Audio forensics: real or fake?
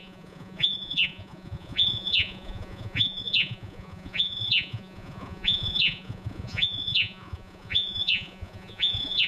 fake